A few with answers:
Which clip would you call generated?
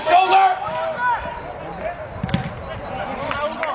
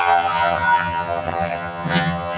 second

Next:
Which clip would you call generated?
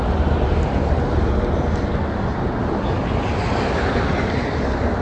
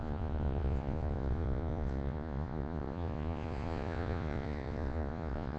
second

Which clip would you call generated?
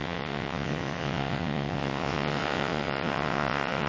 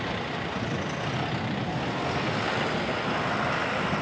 first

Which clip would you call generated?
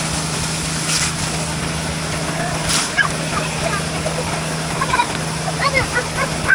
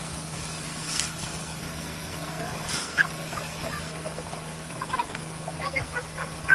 second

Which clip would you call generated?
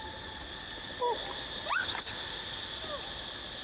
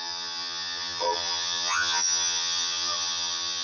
second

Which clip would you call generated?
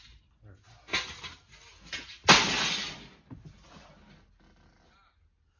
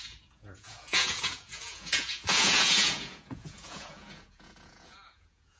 second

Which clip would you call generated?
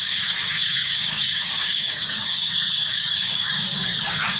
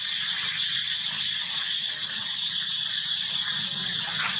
first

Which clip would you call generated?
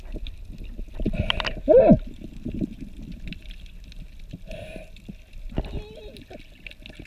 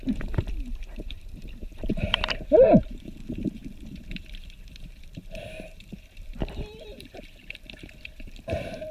second